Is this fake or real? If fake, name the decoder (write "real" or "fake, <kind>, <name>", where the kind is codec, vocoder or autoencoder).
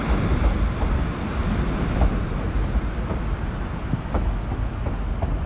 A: real